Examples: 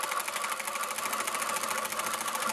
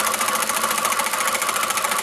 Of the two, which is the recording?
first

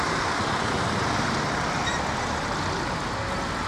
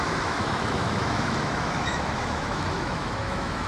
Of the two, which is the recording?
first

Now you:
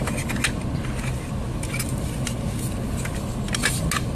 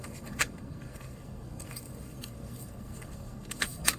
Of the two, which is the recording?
first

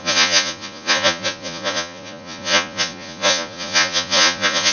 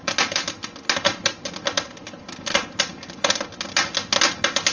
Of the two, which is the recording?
second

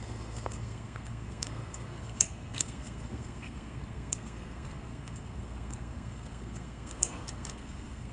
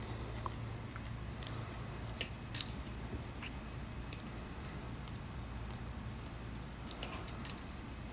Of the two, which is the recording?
second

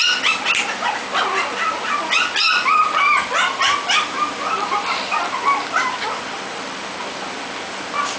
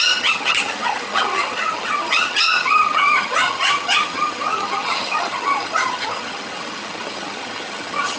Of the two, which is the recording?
first